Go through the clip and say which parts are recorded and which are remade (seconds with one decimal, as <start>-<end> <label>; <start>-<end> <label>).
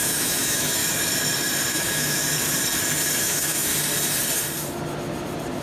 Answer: 0.0-0.8 remade; 0.8-1.7 recorded; 1.7-2.2 remade; 2.2-3.2 recorded; 3.2-3.7 remade; 3.7-5.6 recorded